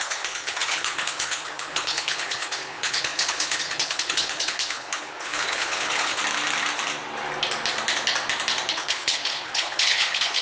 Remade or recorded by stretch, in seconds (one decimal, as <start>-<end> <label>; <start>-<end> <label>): 0.0-6.2 remade; 6.2-8.7 recorded; 8.7-10.4 remade